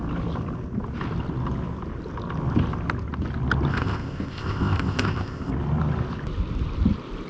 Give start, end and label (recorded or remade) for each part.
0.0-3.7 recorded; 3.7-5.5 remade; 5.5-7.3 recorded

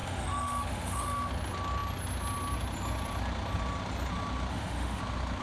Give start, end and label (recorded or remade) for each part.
0.0-1.3 remade; 1.3-4.5 recorded; 4.5-5.0 remade; 5.0-5.4 recorded

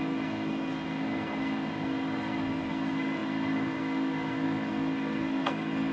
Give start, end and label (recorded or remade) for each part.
0.0-5.9 remade

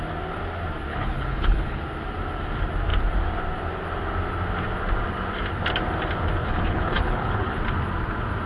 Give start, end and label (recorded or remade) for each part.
0.0-0.9 recorded; 0.9-1.8 remade; 1.8-6.4 recorded; 6.4-7.6 remade; 7.6-8.5 recorded

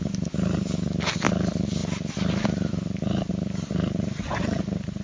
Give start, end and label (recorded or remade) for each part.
0.0-5.0 recorded

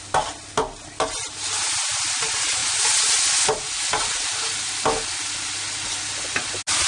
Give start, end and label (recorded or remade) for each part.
0.0-6.9 recorded

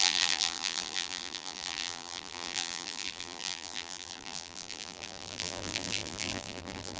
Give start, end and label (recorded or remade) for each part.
0.0-7.0 remade